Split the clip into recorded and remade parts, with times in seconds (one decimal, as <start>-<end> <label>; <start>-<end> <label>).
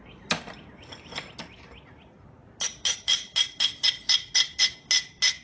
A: 0.0-5.4 recorded